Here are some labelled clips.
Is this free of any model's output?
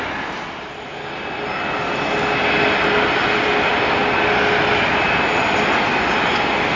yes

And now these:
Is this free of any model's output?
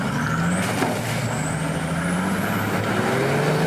yes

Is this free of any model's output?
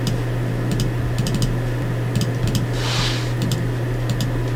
yes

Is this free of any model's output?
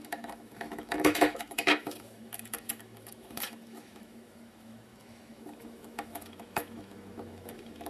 no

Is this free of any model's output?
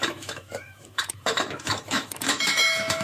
no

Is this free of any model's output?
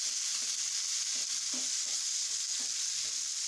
yes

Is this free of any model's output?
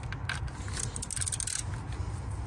yes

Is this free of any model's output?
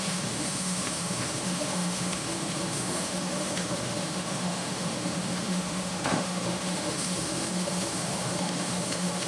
no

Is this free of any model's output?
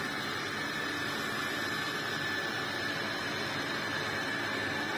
yes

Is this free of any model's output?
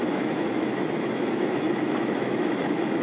no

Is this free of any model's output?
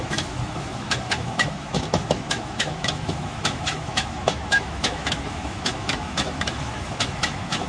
no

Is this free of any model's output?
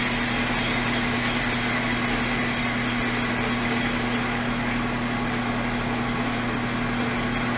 yes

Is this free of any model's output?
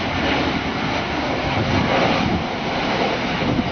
yes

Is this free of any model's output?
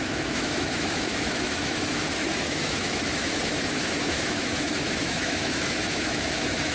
no